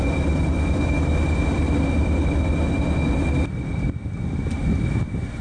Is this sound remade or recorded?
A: recorded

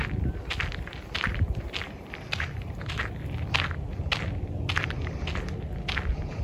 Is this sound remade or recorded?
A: recorded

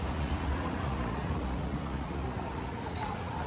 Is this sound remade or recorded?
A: remade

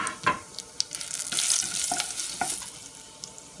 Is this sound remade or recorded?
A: recorded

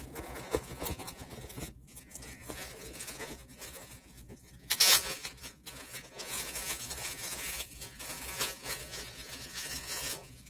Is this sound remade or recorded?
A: remade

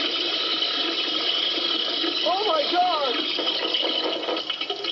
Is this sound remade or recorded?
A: recorded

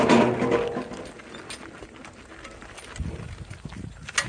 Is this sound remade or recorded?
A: recorded